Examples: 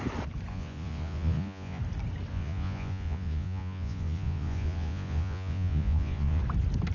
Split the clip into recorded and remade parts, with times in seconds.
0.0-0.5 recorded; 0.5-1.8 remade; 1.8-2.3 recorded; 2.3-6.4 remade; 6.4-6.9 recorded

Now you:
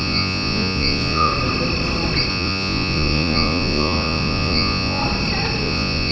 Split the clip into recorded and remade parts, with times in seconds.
0.0-1.3 remade; 1.3-2.3 recorded; 2.3-5.0 remade; 5.0-5.6 recorded; 5.6-6.1 remade